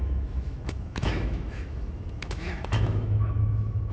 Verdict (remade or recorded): remade